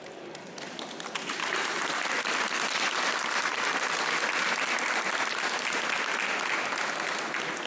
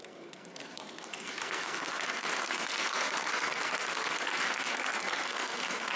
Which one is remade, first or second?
second